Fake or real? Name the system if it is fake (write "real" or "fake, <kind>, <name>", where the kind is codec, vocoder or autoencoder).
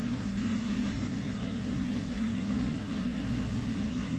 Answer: fake, codec, SNAC